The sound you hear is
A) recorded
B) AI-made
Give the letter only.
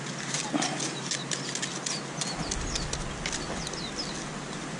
A